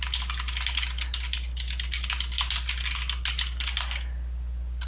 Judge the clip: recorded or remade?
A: recorded